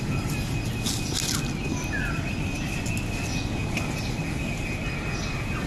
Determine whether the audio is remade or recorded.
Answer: recorded